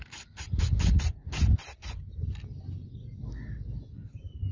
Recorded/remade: recorded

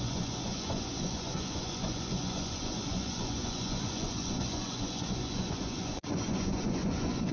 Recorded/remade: remade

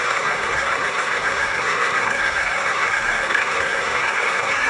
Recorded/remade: remade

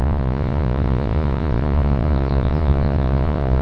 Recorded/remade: remade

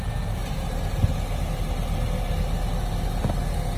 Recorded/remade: recorded